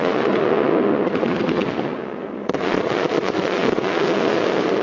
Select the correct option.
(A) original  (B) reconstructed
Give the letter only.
B